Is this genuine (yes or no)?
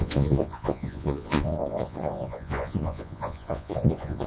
no